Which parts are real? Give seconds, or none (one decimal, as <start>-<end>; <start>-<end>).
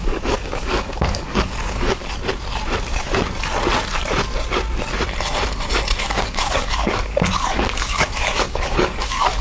2.0-6.0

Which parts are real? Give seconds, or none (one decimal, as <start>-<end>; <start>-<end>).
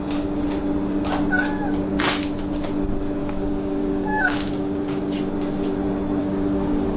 0.0-3.2; 5.0-6.2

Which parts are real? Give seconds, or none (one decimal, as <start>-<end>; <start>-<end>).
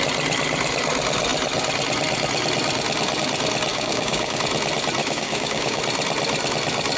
0.0-3.7; 4.4-5.0; 5.8-7.0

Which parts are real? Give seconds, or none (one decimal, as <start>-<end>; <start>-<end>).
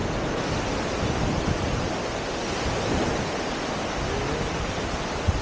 0.0-5.4